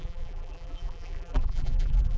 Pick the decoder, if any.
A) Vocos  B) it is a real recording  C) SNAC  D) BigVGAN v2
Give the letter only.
D